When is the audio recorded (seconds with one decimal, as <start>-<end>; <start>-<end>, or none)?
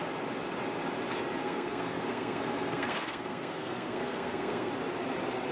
0.0-1.4; 4.7-5.5